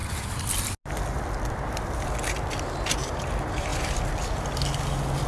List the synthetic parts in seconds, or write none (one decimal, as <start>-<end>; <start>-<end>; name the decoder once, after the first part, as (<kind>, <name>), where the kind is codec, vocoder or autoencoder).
none